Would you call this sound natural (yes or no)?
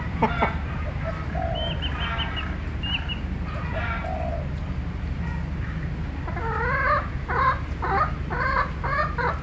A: yes